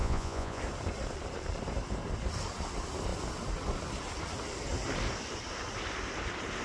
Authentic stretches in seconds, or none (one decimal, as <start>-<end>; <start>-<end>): 0.6-6.6